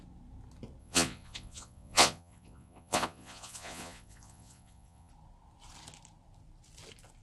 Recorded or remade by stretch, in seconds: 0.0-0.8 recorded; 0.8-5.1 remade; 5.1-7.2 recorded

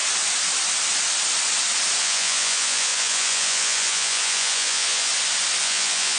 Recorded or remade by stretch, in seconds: 0.0-2.0 recorded; 2.0-5.1 remade; 5.1-5.6 recorded; 5.6-6.2 remade